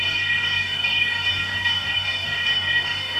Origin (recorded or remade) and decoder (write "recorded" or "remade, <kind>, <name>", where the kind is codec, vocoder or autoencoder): remade, codec, DAC